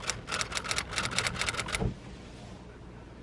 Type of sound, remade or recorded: recorded